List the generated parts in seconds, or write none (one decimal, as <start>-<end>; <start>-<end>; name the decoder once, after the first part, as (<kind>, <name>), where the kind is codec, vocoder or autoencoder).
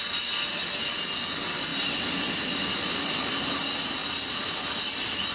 none